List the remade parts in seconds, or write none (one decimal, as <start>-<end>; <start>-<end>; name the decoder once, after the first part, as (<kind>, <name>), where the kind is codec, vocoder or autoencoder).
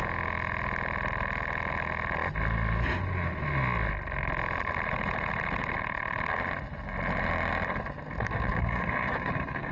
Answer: 8.5-9.7 (codec, DAC)